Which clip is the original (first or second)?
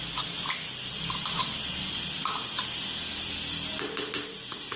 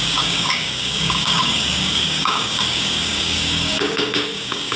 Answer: first